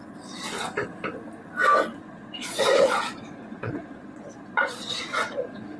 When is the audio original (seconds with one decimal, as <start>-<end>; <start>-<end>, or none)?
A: 0.0-2.0